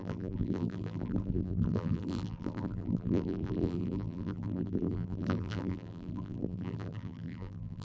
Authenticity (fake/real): fake